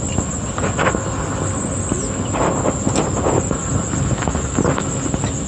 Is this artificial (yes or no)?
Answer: no